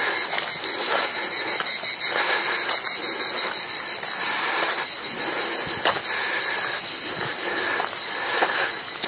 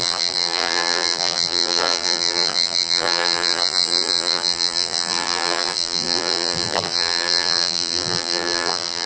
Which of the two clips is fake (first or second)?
second